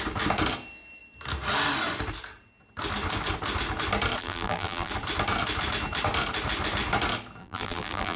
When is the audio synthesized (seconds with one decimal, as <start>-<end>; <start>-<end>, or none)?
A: 4.2-4.9; 7.4-8.2